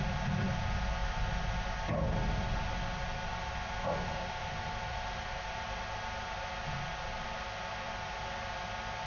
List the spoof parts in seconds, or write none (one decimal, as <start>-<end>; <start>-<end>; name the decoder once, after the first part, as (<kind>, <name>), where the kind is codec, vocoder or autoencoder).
none